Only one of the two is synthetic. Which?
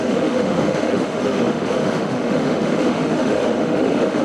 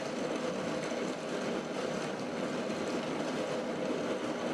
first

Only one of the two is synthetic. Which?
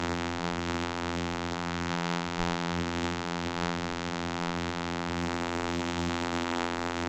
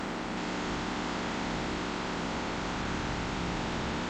first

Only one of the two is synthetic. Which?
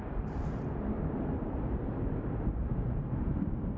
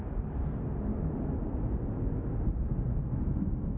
first